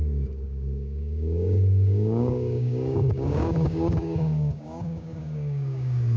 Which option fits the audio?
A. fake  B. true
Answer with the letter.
A